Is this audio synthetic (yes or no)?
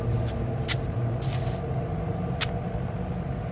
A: no